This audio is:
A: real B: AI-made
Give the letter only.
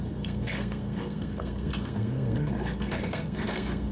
B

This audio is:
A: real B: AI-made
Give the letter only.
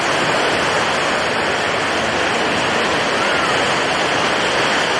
A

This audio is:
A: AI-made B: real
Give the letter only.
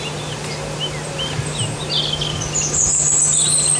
B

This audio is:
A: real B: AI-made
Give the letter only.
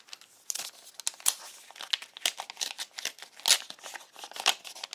A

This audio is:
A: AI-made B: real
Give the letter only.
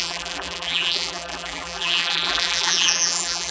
A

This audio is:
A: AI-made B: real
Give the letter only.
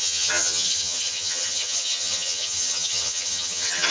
A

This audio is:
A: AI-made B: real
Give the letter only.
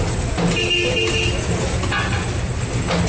B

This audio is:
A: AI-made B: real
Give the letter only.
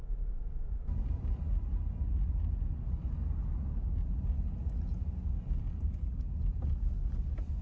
B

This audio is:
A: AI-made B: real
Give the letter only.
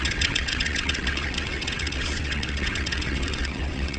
A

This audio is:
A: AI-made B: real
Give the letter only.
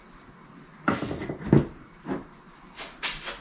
B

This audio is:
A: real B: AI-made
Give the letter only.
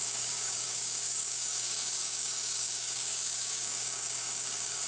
B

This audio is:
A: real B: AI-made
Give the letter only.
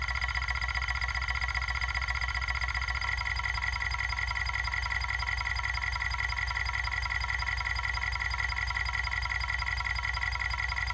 A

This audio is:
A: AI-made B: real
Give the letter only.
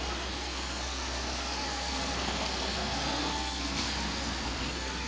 A